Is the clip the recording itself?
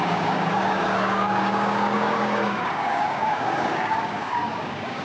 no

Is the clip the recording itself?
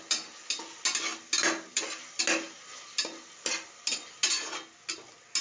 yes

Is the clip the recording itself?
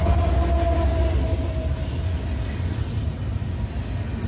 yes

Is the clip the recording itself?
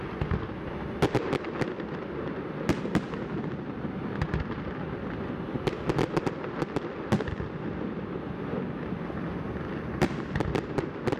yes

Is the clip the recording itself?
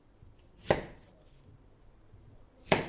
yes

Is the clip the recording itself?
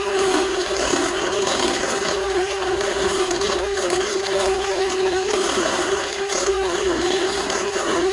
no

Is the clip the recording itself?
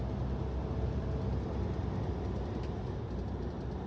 yes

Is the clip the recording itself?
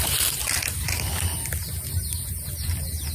yes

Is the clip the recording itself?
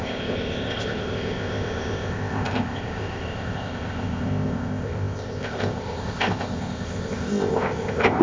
no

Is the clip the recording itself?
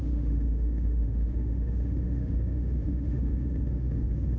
no